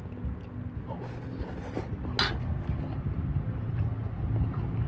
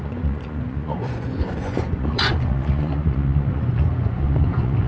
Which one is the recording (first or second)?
first